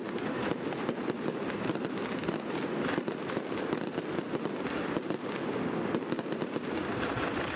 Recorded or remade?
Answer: recorded